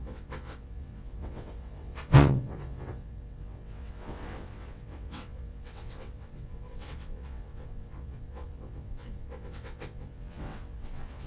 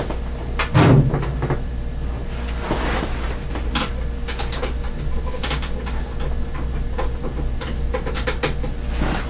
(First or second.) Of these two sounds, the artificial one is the first